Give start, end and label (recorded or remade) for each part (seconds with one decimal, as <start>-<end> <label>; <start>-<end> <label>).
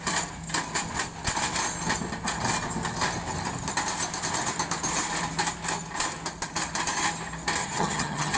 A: 0.0-7.6 recorded; 7.6-8.4 remade